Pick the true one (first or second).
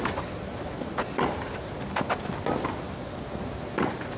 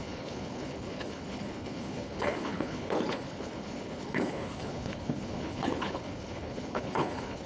first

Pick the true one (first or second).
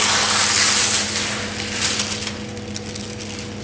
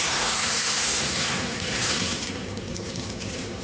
first